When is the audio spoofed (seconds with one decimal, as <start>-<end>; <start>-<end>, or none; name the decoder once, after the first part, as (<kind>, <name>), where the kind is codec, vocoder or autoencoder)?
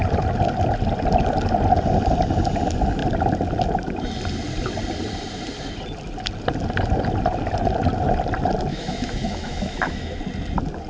8.7-10.2 (autoencoder, DAC-VAE)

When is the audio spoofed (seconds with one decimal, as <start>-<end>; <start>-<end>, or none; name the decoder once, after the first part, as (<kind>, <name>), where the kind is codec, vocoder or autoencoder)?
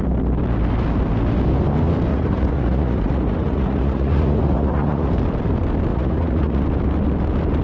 2.1-5.1 (vocoder, Vocos); 5.9-6.6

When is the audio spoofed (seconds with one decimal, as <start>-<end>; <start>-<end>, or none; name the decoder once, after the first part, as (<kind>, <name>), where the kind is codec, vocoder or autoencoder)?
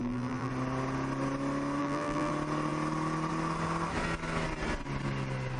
0.0-0.5 (vocoder, BigVGAN v2); 1.8-2.3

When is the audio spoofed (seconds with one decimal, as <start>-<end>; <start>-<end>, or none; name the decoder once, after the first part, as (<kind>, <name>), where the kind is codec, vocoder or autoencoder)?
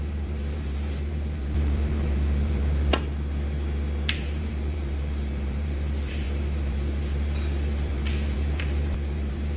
0.0-2.9 (vocoder, BigVGAN v2); 4.1-9.6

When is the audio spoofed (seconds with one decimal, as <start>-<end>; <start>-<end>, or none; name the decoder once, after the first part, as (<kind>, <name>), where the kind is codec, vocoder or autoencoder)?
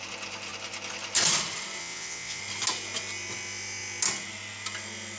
1.8-2.4 (vocoder, WaveNeXt)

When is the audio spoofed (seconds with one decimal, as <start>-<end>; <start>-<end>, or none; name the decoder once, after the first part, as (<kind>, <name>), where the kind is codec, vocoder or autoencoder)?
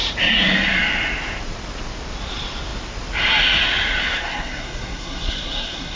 4.0-6.0 (codec, SNAC)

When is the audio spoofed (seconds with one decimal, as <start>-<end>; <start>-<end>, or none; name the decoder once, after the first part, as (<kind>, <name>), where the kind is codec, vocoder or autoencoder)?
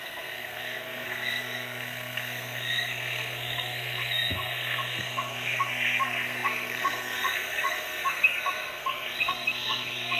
0.0-10.2 (codec, SNAC)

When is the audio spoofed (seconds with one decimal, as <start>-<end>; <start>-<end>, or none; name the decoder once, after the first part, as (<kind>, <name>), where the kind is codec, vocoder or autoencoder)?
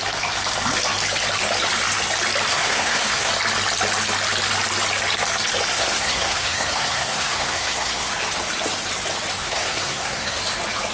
2.5-3.3 (codec, SNAC); 5.7-8.1; 9.4-10.4